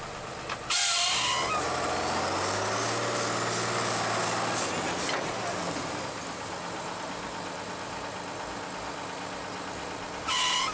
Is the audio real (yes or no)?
yes